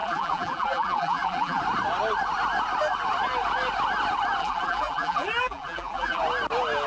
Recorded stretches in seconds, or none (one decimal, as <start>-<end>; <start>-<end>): 1.6-4.4; 6.2-6.9